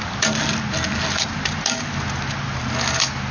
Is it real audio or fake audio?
real